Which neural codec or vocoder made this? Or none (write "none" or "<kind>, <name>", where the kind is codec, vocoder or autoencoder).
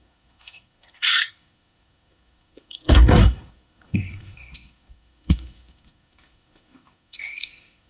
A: codec, SNAC